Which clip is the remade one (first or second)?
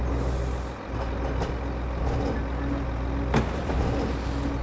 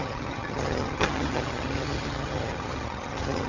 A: second